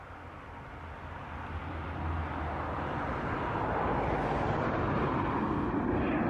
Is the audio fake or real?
real